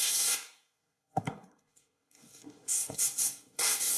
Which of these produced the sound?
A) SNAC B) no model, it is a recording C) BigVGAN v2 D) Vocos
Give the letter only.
A